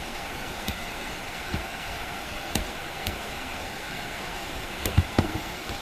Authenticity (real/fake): fake